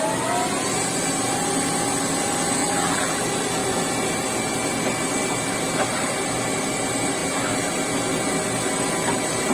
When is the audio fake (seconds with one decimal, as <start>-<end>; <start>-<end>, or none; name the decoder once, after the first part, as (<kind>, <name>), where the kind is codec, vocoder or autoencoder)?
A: 2.6-3.2 (vocoder, BigVGAN v2); 7.2-7.7